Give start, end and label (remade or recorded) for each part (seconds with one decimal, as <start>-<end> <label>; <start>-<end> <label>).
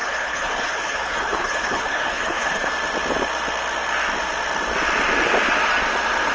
0.0-2.7 remade; 2.7-6.3 recorded